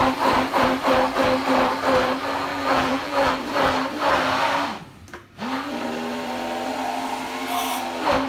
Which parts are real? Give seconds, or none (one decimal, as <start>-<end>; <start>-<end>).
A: 0.0-2.5; 3.3-8.3

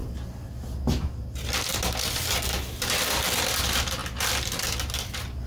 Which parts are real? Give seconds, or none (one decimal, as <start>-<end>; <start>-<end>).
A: 0.0-5.5

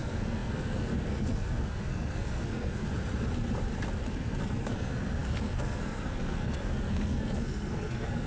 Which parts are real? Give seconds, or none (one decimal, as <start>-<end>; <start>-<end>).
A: 2.9-4.1

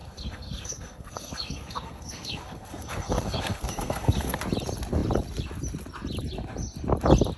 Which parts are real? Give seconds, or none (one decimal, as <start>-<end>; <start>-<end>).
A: 4.4-7.4

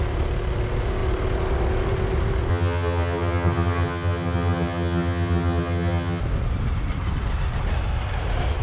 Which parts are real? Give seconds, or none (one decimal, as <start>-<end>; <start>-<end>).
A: 0.0-2.5; 6.2-8.6

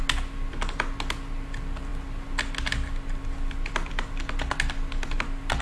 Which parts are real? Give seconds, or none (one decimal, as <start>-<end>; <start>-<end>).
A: 0.0-5.6